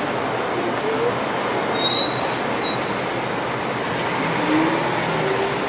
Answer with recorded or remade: recorded